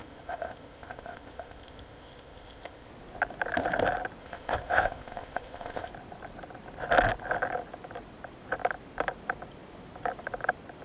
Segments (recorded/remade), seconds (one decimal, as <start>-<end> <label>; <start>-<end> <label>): 0.0-2.9 remade; 2.9-4.2 recorded; 4.2-5.9 remade; 5.9-10.8 recorded